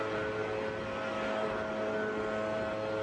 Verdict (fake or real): real